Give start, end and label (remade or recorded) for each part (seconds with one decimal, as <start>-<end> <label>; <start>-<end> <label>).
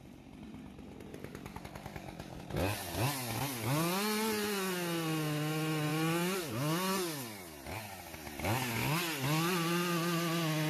0.0-1.1 recorded; 1.1-2.4 remade; 2.4-10.7 recorded